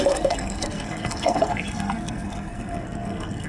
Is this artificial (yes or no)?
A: yes